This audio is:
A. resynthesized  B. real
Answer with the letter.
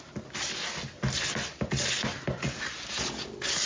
B